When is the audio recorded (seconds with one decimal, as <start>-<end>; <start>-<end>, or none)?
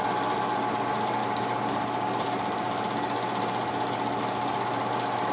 0.0-5.3